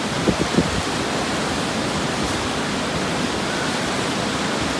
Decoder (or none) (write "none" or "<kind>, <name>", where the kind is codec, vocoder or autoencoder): none